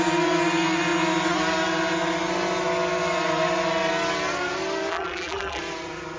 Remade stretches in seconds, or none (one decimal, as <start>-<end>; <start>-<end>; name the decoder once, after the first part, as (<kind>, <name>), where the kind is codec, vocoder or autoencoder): 4.9-5.6 (vocoder, BigVGAN v2)